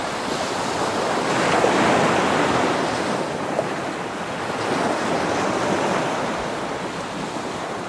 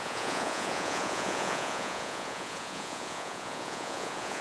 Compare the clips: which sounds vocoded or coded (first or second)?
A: second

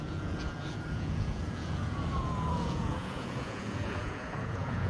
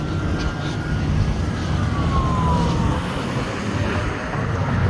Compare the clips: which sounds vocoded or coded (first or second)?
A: first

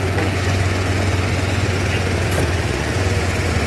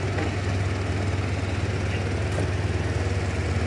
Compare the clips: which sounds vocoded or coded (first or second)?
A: first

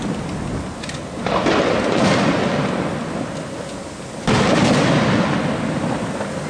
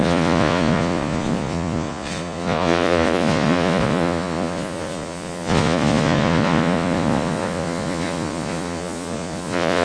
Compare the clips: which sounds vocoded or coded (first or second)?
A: second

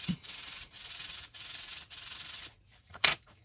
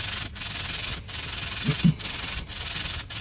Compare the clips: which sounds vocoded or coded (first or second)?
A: first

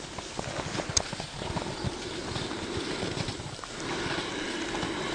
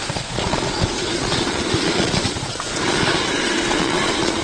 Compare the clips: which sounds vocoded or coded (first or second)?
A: second